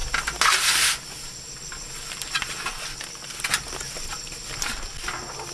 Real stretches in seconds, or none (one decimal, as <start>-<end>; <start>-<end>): 0.0-5.5